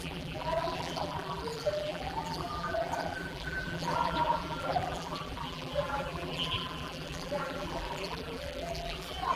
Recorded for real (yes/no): no